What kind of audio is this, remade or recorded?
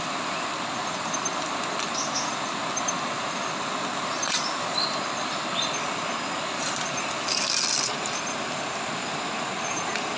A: recorded